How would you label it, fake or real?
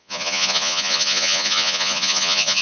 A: fake